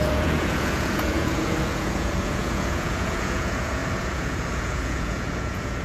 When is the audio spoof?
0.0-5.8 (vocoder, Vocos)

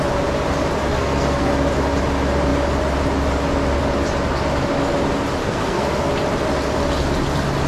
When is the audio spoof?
0.9-1.5 (codec, SNAC); 5.4-6.1

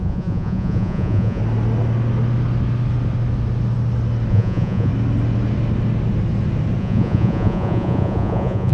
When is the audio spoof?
0.0-1.4 (vocoder, Vocos); 4.3-4.9; 6.8-8.7

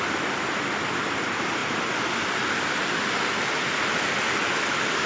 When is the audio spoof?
none

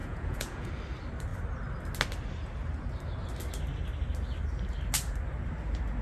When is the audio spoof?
0.0-0.7 (vocoder, Vocos)

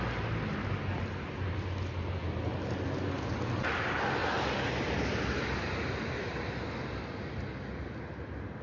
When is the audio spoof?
2.2-2.7 (vocoder, BigVGAN v2)